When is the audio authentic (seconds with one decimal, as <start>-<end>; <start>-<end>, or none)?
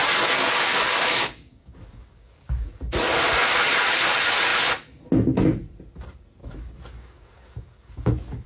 2.8-6.4